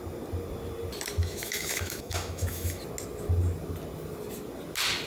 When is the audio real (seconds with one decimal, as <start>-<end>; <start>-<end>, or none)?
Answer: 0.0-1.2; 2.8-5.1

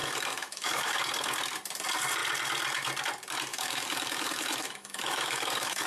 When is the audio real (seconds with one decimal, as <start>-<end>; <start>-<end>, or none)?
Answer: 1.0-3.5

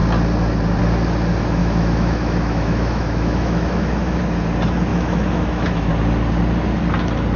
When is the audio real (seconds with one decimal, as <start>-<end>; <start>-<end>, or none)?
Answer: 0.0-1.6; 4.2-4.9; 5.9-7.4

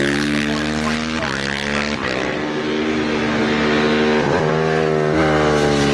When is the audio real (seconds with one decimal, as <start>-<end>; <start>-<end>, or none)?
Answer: 0.0-5.9

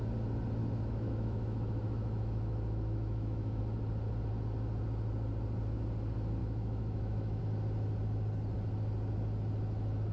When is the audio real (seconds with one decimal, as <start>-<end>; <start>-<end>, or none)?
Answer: 0.0-0.6; 3.6-6.4; 7.4-10.1

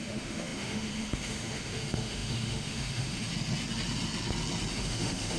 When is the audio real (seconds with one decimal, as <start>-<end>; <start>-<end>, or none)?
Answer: 3.3-4.7

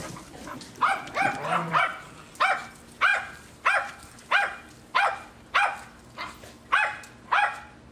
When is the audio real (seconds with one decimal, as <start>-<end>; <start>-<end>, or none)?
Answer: 0.0-7.9

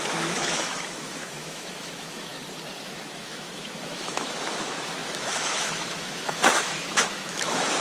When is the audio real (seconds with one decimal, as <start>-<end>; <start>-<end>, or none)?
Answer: 2.3-2.8